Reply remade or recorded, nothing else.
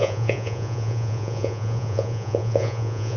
remade